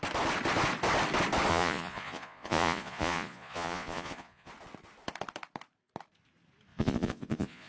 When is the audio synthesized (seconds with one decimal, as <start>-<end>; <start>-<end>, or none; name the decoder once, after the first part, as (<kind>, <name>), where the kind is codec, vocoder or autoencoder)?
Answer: 1.5-4.5 (vocoder, Vocos); 6.7-7.7